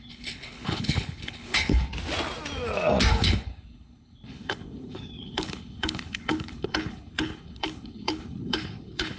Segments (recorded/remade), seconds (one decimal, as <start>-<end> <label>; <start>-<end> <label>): 0.0-1.9 remade; 1.9-3.1 recorded; 3.1-9.2 remade